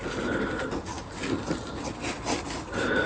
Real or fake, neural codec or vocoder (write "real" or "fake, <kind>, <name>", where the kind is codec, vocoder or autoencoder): real